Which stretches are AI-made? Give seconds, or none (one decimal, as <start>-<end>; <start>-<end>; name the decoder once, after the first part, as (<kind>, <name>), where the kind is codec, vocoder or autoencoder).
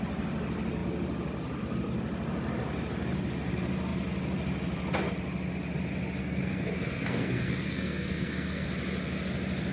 6.2-8.7 (codec, SNAC)